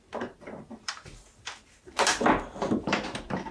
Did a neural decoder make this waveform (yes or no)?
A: yes